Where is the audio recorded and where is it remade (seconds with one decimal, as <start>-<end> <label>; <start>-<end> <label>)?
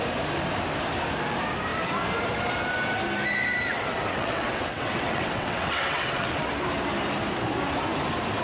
0.0-3.7 recorded; 3.7-6.5 remade; 6.5-8.4 recorded